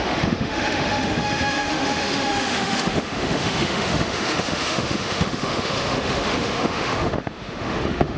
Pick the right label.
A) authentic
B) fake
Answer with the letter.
B